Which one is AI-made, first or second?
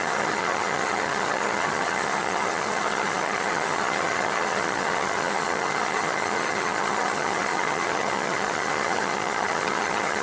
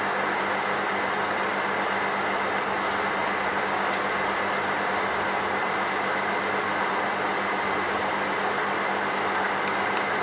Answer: first